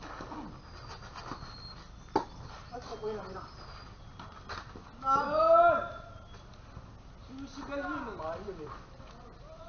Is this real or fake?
real